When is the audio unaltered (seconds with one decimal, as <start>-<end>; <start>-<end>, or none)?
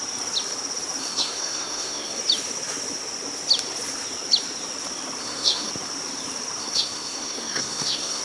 0.0-1.0; 2.2-5.2; 5.7-6.6